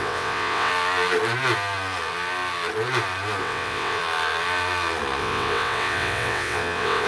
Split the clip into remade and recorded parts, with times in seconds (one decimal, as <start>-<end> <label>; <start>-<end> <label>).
0.0-0.7 remade; 0.7-3.4 recorded; 3.4-4.0 remade; 4.0-5.2 recorded; 5.2-7.1 remade